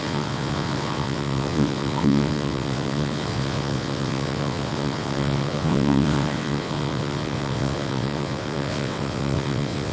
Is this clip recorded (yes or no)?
no